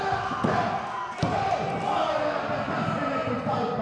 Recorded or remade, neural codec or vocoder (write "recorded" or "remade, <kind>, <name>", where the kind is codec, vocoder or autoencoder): recorded